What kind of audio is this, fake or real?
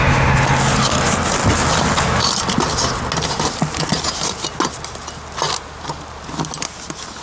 real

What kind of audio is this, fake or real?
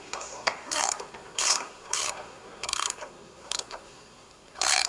fake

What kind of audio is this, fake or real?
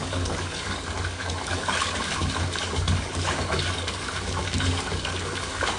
fake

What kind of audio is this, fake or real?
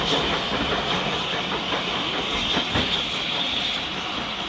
real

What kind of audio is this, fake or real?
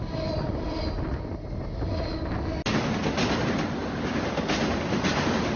real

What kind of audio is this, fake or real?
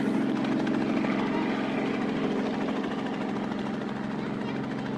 real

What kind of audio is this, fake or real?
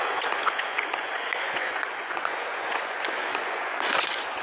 fake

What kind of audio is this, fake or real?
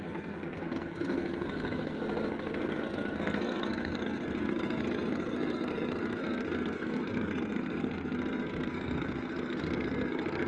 fake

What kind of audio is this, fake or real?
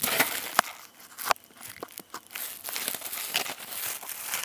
real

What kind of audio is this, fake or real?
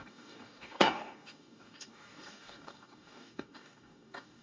fake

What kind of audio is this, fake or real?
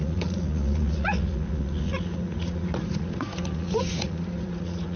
fake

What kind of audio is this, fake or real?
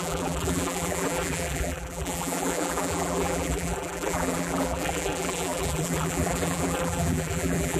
fake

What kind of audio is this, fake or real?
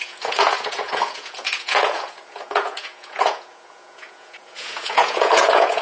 fake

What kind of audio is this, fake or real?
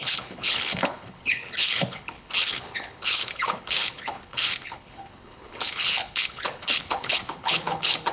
fake